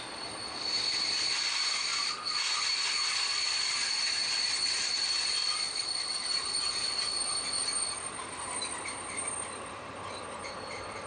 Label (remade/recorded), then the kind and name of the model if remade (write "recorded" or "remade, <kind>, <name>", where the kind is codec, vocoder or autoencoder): recorded